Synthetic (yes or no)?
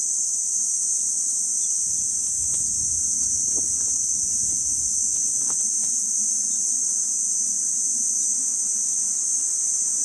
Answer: no